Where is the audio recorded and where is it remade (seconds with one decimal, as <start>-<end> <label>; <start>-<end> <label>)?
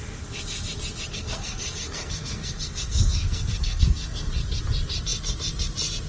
0.0-1.1 recorded; 1.1-4.3 remade; 4.3-6.1 recorded